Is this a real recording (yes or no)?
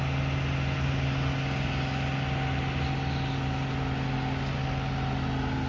yes